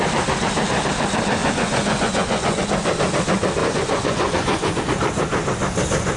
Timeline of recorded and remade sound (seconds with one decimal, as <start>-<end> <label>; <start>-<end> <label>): 0.0-1.4 recorded; 1.4-2.6 remade; 2.6-3.6 recorded; 3.6-4.8 remade; 4.8-6.2 recorded